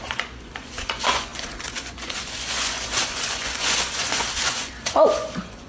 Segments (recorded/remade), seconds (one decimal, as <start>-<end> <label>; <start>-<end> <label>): 0.0-5.7 remade